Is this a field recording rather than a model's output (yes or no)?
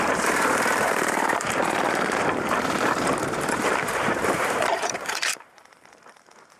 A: no